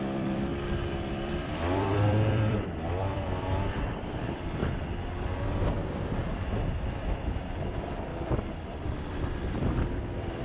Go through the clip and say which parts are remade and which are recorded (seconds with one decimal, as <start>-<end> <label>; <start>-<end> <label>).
0.0-4.6 remade; 4.6-5.3 recorded; 5.3-10.4 remade